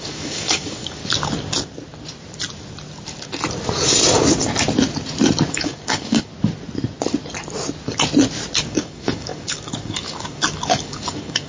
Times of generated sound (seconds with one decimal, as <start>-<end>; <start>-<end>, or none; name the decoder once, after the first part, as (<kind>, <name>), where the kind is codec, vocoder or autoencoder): 0.0-1.0 (codec, DAC); 5.5-6.3; 8.6-11.5